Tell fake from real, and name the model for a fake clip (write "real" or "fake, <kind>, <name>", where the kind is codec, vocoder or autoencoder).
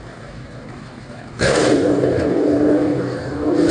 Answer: fake, codec, DAC